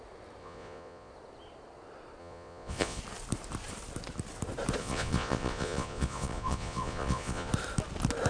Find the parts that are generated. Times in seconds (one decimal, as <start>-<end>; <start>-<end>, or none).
0.4-1.1; 2.2-3.0; 4.8-7.5